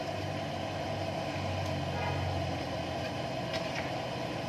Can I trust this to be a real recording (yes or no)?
yes